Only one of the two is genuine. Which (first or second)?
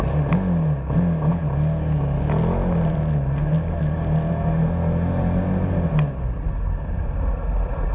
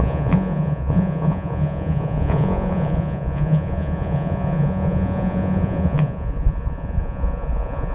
first